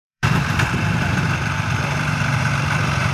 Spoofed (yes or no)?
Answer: yes